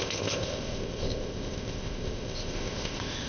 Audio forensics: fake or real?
fake